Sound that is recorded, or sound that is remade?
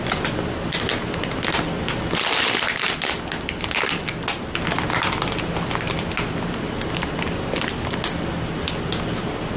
recorded